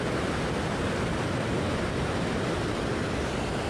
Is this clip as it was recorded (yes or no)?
yes